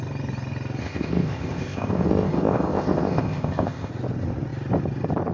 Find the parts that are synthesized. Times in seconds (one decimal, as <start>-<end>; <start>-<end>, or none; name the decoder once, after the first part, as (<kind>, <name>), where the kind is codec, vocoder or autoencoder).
0.8-3.9 (codec, ZipCodec)